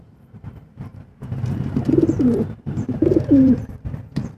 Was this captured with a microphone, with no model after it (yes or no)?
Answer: no